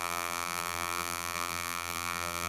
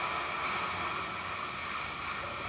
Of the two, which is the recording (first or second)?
second